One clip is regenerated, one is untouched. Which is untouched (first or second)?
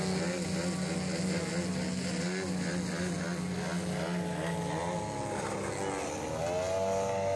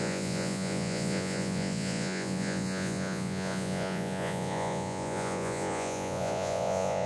first